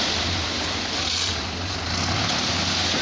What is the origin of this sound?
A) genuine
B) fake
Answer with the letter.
A